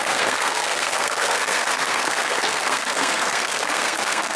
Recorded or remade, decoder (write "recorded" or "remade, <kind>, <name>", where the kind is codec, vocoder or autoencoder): remade, codec, SNAC